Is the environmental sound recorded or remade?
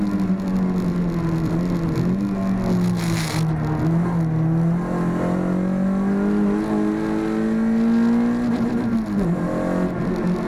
recorded